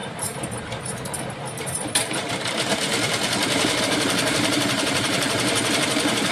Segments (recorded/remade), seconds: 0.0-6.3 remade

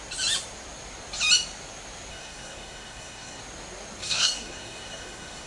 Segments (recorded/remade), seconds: 0.0-2.1 recorded; 2.1-3.4 remade; 3.4-4.0 recorded; 4.0-5.5 remade

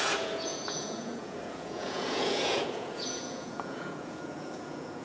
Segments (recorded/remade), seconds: 0.0-5.0 remade